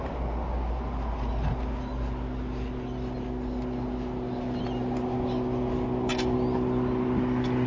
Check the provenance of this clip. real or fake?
real